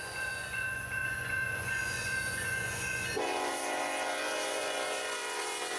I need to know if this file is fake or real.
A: fake